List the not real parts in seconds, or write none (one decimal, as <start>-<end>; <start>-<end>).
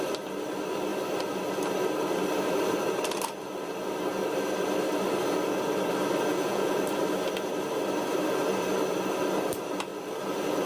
6.3-6.8